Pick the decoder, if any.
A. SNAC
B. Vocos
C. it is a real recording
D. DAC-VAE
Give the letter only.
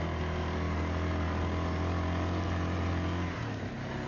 C